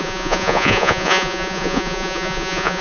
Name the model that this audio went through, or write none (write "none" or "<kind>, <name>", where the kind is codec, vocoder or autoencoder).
vocoder, Vocos